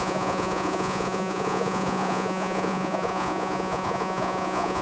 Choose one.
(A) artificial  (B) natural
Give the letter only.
A